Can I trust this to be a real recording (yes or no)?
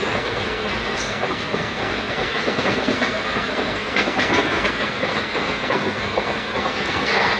no